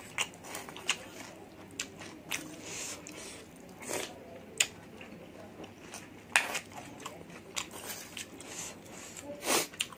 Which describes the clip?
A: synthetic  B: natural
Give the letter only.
B